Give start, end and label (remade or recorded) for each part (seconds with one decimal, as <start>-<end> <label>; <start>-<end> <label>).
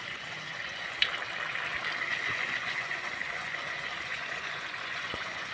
0.0-1.0 remade; 1.0-2.1 recorded; 2.1-5.5 remade